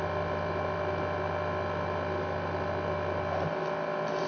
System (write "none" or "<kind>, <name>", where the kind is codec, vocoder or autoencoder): none